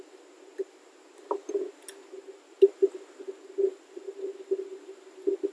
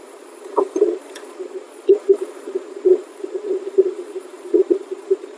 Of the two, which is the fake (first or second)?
second